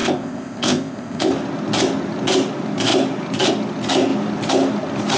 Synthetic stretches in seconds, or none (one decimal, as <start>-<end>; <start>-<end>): 0.0-1.3